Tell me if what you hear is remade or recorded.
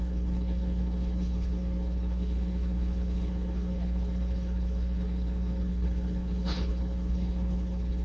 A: remade